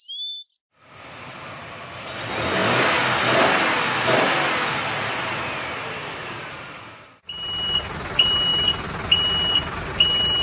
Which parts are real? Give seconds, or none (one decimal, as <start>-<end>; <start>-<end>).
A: 0.0-10.4